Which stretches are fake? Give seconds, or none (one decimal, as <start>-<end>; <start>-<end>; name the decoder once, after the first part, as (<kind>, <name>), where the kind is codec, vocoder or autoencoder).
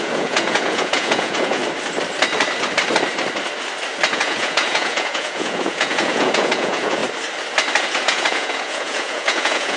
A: 0.0-1.6 (vocoder, Vocos); 4.1-7.0; 7.8-9.8